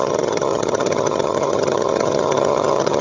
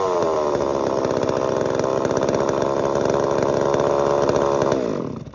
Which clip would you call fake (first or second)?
first